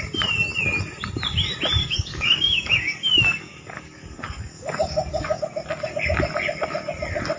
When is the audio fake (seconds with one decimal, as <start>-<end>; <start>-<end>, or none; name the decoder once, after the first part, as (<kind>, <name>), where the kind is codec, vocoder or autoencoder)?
1.8-5.4 (codec, DAC)